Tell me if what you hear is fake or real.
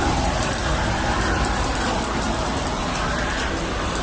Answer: real